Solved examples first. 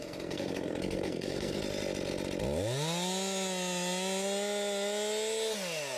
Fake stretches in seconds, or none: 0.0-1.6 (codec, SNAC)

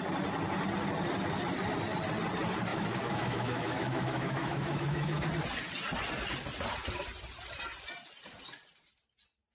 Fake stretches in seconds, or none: 2.7-5.3 (autoencoder, DAC-VAE)

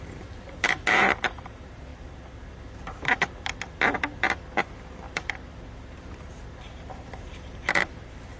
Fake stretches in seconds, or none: 0.0-1.9 (vocoder, BigVGAN v2); 5.1-8.4

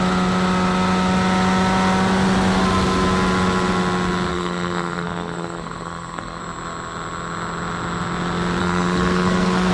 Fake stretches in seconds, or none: 4.3-6.4 (codec, SNAC); 8.6-9.7